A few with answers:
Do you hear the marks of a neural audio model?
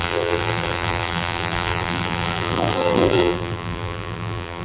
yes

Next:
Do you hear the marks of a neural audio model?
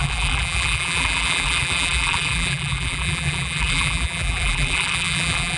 yes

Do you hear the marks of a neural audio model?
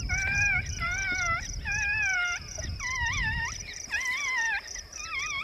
yes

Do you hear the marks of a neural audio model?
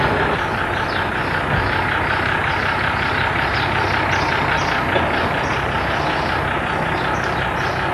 no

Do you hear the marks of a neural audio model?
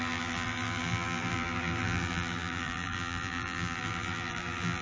yes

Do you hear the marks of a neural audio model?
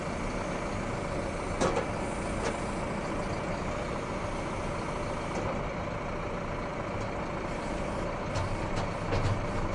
no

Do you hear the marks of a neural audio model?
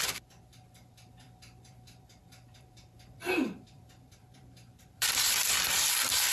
yes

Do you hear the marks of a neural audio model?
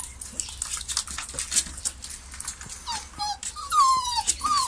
no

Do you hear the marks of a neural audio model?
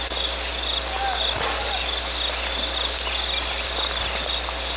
no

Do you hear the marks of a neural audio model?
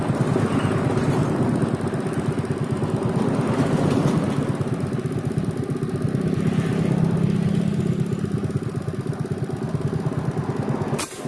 no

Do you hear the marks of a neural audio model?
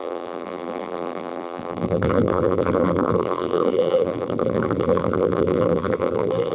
yes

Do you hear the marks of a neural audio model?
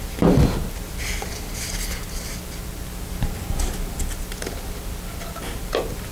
no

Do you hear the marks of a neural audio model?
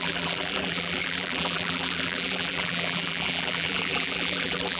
yes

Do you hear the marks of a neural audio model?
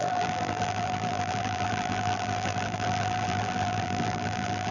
yes